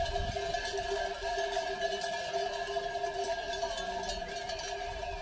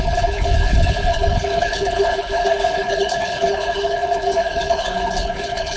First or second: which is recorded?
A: first